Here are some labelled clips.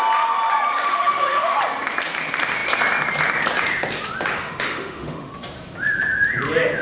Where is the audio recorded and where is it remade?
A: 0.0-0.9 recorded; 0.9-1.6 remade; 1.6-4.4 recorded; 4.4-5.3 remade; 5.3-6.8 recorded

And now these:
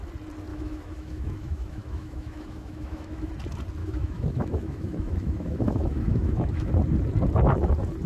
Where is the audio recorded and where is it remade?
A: 0.0-0.5 recorded; 0.5-3.3 remade; 3.3-3.8 recorded; 3.8-6.7 remade; 6.7-8.1 recorded

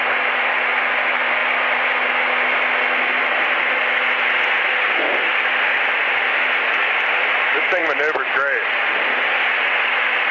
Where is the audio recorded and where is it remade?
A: 0.0-10.3 recorded

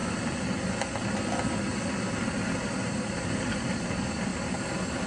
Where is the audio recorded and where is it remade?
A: 0.0-5.1 recorded

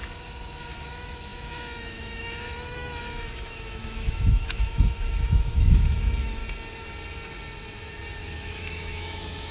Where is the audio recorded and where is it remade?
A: 0.0-0.6 recorded; 0.6-6.4 remade; 6.4-8.2 recorded; 8.2-9.5 remade

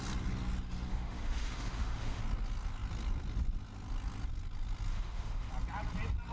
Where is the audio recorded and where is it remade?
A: 0.0-0.9 recorded; 0.9-2.2 remade; 2.2-4.9 recorded; 4.9-5.5 remade; 5.5-6.3 recorded